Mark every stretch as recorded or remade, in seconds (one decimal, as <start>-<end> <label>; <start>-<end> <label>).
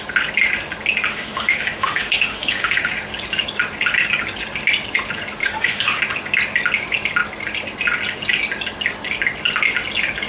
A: 0.0-1.1 recorded; 1.1-2.9 remade; 2.9-5.4 recorded; 5.4-6.0 remade; 6.0-10.3 recorded